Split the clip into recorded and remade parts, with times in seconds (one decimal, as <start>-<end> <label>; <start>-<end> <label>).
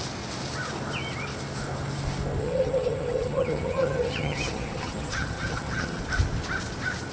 0.0-2.4 recorded; 2.4-6.0 remade; 6.0-7.1 recorded